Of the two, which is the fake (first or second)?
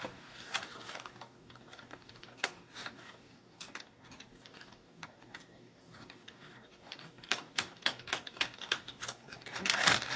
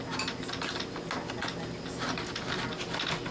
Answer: first